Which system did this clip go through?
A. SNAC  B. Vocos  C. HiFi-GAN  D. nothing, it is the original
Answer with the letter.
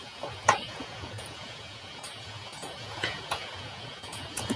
B